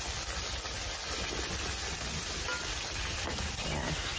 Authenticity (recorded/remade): recorded